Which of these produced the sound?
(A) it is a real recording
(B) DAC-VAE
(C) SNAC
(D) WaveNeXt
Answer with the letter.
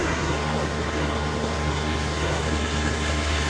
C